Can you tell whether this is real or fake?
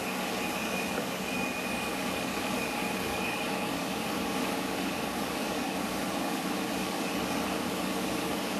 fake